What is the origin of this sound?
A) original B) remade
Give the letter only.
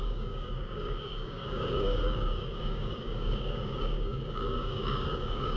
B